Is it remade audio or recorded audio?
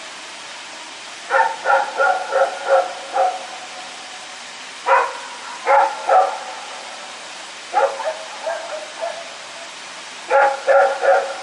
recorded